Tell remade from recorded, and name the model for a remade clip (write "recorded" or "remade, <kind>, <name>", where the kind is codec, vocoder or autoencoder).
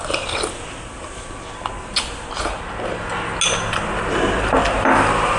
recorded